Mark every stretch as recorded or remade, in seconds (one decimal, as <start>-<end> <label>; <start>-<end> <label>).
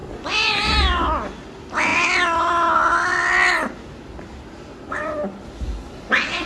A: 0.0-6.5 recorded